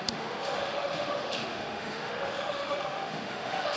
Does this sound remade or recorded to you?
remade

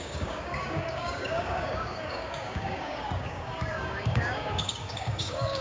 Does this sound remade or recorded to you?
remade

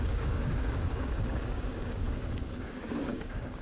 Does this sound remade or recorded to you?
remade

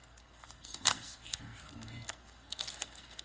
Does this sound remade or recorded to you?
remade